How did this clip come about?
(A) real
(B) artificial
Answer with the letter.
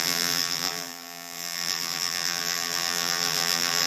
B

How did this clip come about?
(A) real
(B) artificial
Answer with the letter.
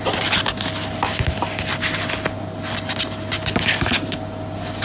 A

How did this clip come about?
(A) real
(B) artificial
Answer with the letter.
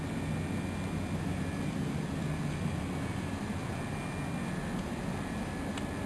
A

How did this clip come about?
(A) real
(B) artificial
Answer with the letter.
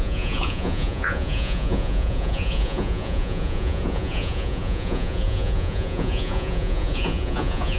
B